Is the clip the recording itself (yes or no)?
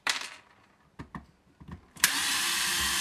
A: no